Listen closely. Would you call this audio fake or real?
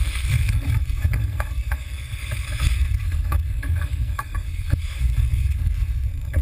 fake